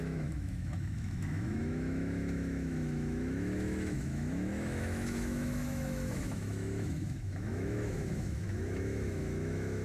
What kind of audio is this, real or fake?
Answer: fake